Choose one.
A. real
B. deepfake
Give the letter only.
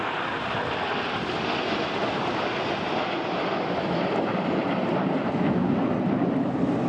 A